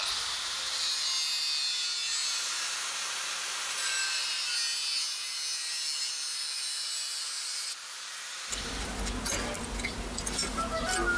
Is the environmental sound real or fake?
real